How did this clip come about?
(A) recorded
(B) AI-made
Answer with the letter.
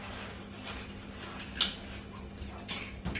A